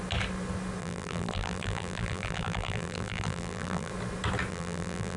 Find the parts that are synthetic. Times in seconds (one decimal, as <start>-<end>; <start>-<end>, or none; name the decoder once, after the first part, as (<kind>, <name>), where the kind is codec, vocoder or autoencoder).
0.8-3.9 (vocoder, BigVGAN v2); 4.5-5.2